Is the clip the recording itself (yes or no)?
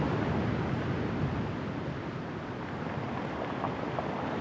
yes